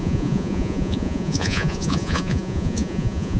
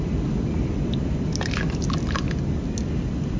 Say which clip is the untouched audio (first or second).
second